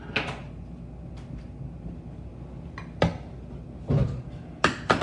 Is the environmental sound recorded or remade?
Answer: recorded